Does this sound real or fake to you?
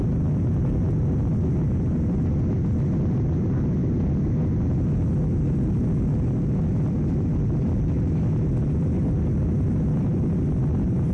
real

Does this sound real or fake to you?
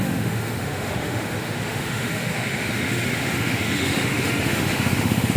fake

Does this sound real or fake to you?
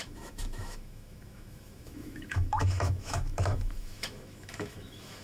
fake